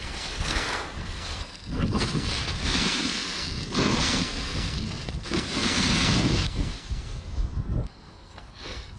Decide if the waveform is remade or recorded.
remade